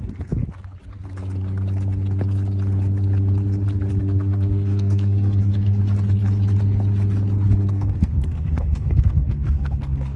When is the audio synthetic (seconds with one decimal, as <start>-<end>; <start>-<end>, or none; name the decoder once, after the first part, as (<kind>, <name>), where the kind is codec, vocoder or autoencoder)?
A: 0.0-0.4 (codec, SNAC); 4.0-5.8; 7.6-10.2